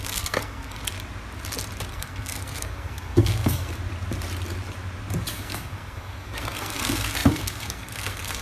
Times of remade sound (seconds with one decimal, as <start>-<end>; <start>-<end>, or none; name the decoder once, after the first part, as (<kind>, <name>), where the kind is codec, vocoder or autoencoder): 0.0-0.8 (codec, SNAC); 1.9-3.7; 5.3-8.4